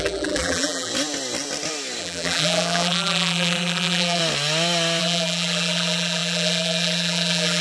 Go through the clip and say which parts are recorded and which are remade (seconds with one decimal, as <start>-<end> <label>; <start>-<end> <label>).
0.0-0.9 remade; 0.9-2.0 recorded; 2.0-4.2 remade; 4.2-5.0 recorded; 5.0-7.6 remade